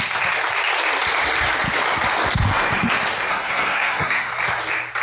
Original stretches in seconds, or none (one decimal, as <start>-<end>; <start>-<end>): 0.0-3.3; 4.3-5.0